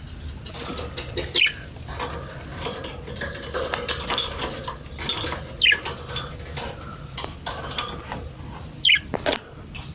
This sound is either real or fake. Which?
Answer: real